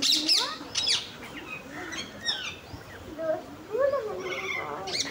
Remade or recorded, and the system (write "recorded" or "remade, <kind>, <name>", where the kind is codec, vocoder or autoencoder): recorded